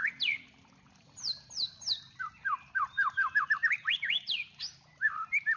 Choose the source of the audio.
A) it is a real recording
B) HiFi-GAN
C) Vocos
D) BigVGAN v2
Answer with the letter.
D